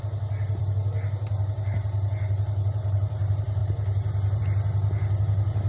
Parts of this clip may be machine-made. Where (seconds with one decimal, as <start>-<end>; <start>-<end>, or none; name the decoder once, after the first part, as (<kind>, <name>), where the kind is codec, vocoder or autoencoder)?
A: none